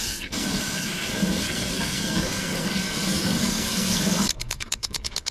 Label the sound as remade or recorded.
remade